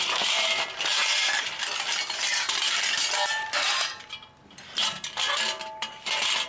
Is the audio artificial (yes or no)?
no